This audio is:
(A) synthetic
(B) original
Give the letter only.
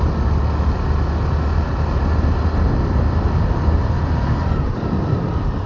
B